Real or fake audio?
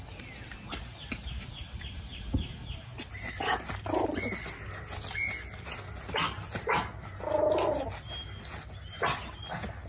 real